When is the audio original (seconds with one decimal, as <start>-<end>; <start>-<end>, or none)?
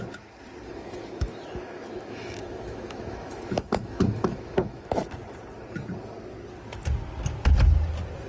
0.0-0.7; 5.0-8.3